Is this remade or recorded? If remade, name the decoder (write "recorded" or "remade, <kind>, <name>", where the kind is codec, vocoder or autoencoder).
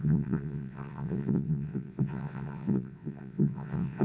remade, vocoder, WaveNeXt